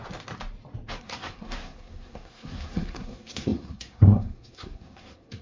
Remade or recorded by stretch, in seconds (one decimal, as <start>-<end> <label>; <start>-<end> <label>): 0.0-1.0 recorded; 1.0-5.4 remade